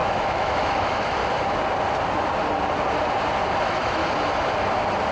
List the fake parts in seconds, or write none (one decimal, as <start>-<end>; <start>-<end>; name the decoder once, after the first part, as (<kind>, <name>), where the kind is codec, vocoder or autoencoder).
0.0-1.2 (autoencoder, DAC-VAE); 3.6-4.0

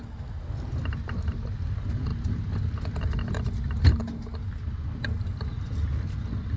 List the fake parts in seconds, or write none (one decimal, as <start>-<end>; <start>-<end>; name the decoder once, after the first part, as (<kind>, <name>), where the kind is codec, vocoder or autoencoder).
none

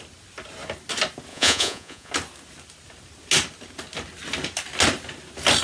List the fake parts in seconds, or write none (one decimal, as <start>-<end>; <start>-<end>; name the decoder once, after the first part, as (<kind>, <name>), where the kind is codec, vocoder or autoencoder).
1.3-2.1 (vocoder, Vocos)

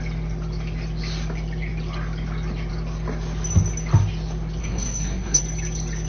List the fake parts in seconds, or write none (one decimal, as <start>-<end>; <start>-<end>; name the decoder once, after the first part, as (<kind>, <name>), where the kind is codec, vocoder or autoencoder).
4.6-5.4 (codec, SNAC)